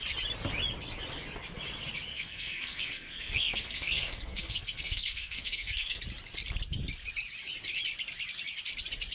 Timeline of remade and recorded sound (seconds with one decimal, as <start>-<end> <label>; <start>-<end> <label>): 0.0-2.1 recorded; 2.1-6.0 remade; 6.0-9.1 recorded